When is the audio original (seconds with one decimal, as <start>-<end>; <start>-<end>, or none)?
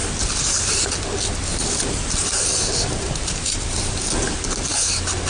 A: 0.8-1.5; 4.7-5.3